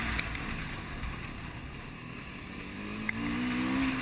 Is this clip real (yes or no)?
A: yes